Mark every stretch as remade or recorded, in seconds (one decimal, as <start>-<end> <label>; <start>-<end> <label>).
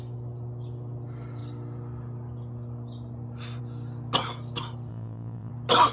0.0-4.9 recorded; 4.9-5.5 remade; 5.5-5.9 recorded